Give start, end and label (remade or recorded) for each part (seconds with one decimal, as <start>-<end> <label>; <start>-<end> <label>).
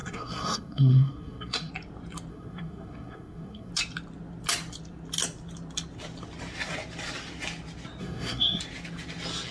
0.0-1.7 remade; 1.7-2.3 recorded; 2.3-3.7 remade; 3.7-8.0 recorded; 8.0-8.6 remade; 8.6-9.5 recorded